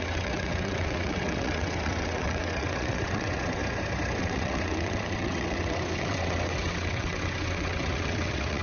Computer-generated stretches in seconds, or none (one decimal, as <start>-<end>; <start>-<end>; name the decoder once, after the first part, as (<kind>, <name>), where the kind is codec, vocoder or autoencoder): 0.0-3.6 (vocoder, WaveNeXt); 4.2-8.6